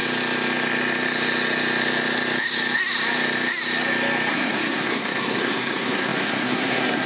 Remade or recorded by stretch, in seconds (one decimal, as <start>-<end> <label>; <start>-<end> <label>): 0.0-4.3 recorded; 4.3-7.1 remade